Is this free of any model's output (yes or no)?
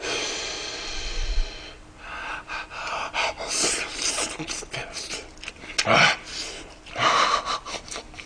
yes